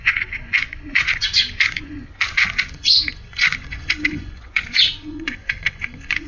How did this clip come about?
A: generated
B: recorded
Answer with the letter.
A